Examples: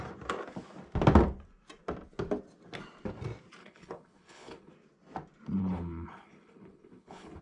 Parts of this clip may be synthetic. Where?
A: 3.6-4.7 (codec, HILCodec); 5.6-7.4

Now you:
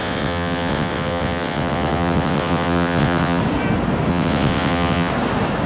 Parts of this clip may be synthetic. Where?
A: 0.0-3.4 (vocoder, WaveNeXt); 4.1-5.1

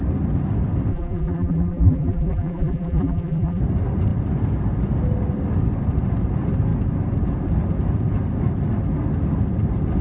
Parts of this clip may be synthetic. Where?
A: 0.9-3.6 (vocoder, BigVGAN v2)

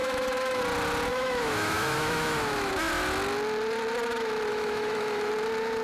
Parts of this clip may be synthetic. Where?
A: 0.0-0.6 (autoencoder, DAC-VAE); 1.1-2.7; 4.5-5.3

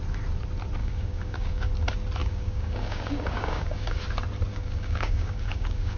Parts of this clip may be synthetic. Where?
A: 0.8-1.7 (codec, DAC); 2.2-4.0; 4.5-6.0